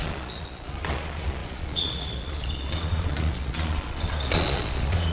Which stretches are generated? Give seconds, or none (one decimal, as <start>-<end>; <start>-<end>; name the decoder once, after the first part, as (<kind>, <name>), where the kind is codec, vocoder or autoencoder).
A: 0.0-5.1 (vocoder, Vocos)